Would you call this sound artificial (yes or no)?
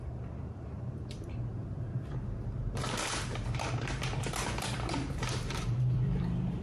yes